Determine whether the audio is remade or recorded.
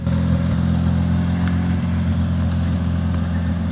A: recorded